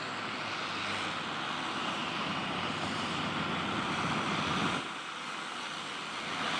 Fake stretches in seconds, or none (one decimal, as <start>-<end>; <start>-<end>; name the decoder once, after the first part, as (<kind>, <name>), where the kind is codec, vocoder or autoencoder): 1.8-3.3 (vocoder, BigVGAN v2)